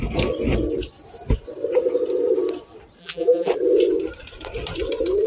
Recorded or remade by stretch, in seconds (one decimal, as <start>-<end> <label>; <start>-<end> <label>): 0.0-3.0 recorded; 3.0-3.5 remade; 3.5-5.3 recorded